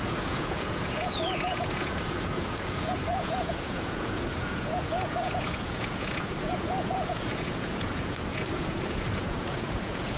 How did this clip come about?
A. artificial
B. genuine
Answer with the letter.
A